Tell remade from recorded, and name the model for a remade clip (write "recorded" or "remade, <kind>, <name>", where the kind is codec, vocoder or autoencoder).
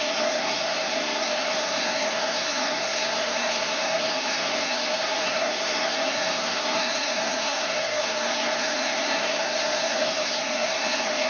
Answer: remade, codec, SNAC